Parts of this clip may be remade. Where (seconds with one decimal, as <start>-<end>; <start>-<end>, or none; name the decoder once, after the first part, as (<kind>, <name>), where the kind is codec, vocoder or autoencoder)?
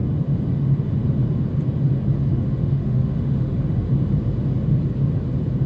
2.3-3.9 (autoencoder, DAC-VAE)